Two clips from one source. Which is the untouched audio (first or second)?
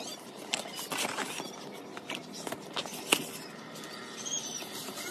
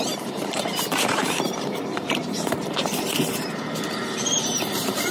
first